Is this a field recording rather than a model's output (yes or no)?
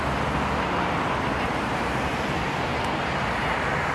yes